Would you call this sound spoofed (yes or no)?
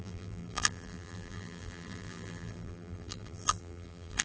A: yes